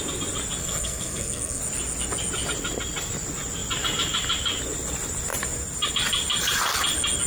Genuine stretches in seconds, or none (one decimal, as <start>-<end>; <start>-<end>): 0.0-0.6; 1.6-7.3